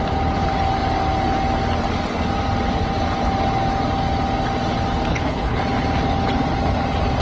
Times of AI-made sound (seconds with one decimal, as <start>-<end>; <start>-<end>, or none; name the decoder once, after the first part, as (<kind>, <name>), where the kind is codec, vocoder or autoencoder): 5.1-5.6 (codec, HILCodec)